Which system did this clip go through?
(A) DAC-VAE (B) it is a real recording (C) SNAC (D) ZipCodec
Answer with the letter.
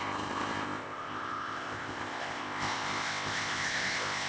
D